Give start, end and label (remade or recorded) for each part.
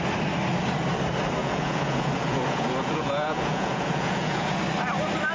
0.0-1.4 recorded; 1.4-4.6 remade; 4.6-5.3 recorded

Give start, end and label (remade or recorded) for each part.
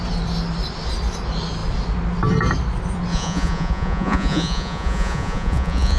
0.0-3.1 recorded; 3.1-6.0 remade